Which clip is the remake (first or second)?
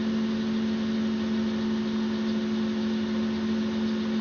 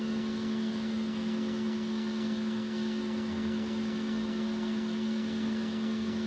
second